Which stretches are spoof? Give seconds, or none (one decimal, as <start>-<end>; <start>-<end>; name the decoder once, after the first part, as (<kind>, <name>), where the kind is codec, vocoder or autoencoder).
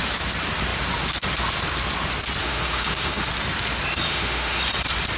2.4-3.3 (autoencoder, DAC-VAE); 4.1-4.6